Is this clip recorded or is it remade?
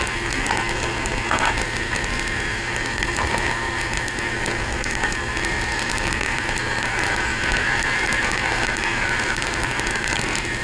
remade